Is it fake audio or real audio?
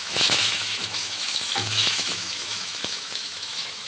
fake